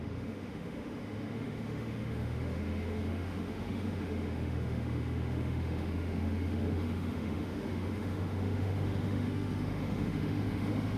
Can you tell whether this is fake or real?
fake